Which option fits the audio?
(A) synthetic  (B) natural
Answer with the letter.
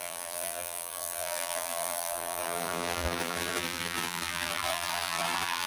A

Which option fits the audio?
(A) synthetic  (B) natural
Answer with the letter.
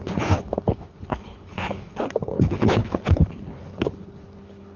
A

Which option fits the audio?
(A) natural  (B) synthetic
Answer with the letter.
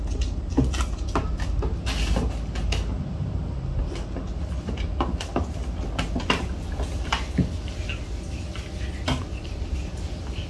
A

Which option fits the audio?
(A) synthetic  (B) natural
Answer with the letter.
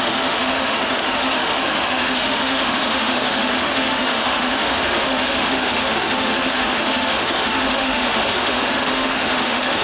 A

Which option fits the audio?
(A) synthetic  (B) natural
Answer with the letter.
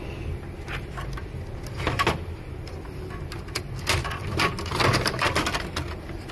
B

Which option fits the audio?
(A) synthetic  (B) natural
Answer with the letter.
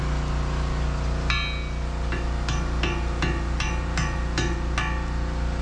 B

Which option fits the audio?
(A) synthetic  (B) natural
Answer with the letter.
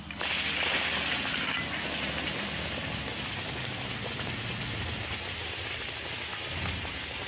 B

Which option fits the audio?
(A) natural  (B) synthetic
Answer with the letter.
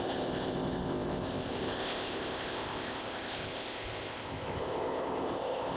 B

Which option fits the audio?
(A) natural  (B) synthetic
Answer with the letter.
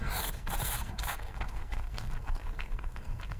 B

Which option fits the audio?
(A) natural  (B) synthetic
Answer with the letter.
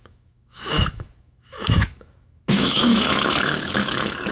B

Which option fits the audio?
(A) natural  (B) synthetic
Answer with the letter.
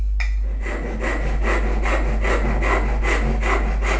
A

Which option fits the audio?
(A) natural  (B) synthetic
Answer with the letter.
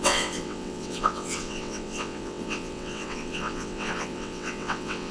B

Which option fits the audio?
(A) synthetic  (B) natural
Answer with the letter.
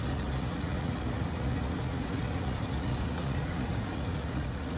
A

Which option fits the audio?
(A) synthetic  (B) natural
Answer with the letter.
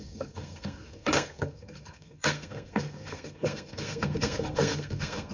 A